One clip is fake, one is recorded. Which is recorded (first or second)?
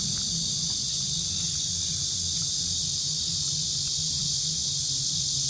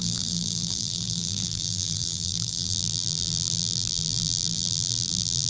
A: first